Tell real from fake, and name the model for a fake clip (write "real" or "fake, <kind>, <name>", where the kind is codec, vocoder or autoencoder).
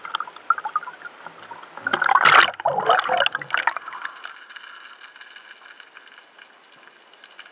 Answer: real